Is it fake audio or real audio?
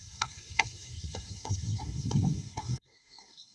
fake